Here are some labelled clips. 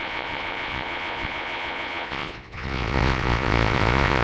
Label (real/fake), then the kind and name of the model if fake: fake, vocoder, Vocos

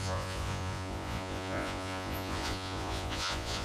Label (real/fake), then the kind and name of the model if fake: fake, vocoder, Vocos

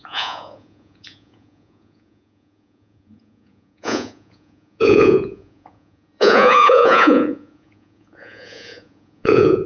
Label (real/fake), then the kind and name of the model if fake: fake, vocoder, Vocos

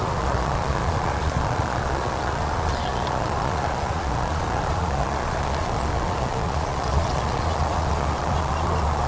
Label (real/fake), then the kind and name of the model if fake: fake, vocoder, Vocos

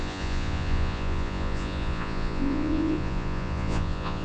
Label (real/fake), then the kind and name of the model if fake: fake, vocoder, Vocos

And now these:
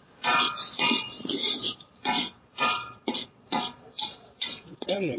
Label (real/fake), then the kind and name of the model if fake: fake, vocoder, Vocos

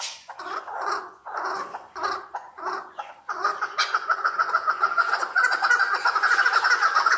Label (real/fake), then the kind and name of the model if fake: fake, vocoder, Vocos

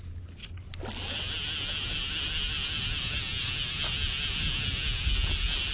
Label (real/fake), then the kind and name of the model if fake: real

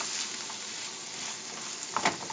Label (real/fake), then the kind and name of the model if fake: real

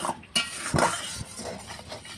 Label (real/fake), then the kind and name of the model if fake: real